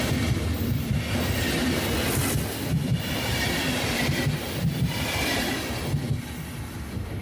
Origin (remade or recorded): recorded